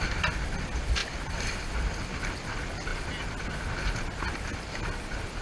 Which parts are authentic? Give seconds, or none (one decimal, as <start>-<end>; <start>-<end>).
0.0-5.4